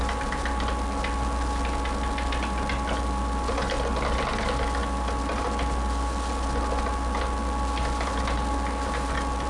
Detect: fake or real real